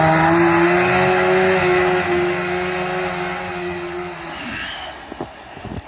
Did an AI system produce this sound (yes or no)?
no